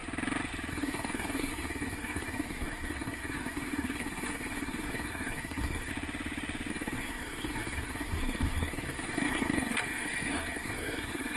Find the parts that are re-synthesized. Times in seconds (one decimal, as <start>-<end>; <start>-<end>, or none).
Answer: 0.7-5.9; 6.7-11.4